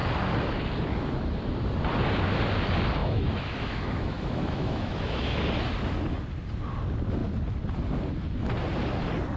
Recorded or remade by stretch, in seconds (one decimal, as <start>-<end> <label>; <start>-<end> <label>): 0.0-3.0 recorded; 3.0-5.4 remade; 5.4-9.4 recorded